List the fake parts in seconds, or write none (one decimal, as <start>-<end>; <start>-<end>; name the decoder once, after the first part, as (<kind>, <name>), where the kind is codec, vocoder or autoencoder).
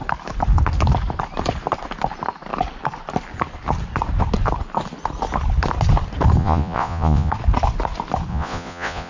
6.4-7.3 (vocoder, Vocos); 8.3-9.1